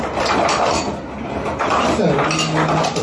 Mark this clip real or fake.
real